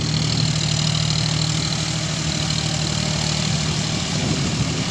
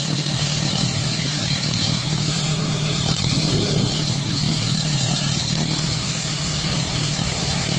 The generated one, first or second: second